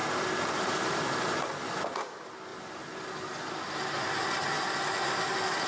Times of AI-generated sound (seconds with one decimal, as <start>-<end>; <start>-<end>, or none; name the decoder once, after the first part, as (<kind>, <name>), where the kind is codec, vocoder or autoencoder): 0.0-1.0 (vocoder, BigVGAN v2)